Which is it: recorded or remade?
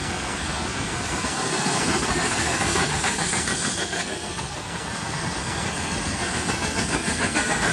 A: remade